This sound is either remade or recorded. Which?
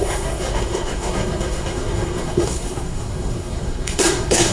remade